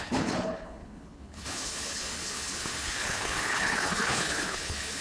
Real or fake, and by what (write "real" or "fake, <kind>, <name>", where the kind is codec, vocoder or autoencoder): fake, codec, HILCodec